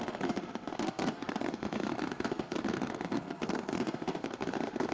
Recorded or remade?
remade